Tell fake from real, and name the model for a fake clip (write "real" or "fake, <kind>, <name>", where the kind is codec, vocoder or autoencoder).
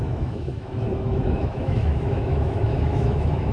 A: fake, autoencoder, DAC-VAE